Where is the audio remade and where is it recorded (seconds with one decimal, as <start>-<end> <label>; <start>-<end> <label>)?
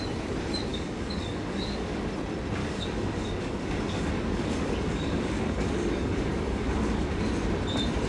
0.0-0.7 recorded; 0.7-2.0 remade; 2.0-2.6 recorded; 2.6-7.2 remade; 7.2-8.1 recorded